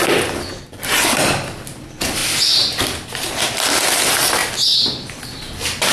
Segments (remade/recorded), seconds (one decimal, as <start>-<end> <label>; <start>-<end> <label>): 0.0-0.5 recorded; 0.5-2.2 remade; 2.2-4.0 recorded; 4.0-4.4 remade; 4.4-4.9 recorded; 4.9-5.9 remade